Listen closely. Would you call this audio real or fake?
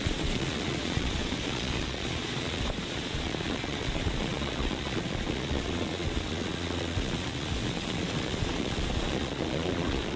fake